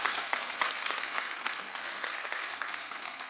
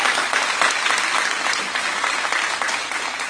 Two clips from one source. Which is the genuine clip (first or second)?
second